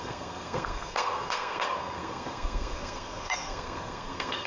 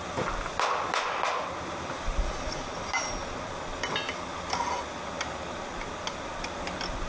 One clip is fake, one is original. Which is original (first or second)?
second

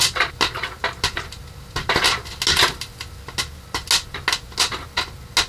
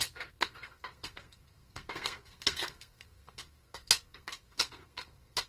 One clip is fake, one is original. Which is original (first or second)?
first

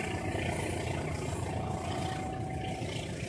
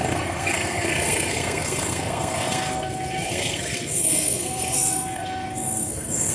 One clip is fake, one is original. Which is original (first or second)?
first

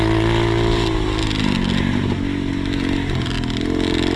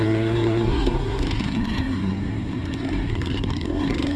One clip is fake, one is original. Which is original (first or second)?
first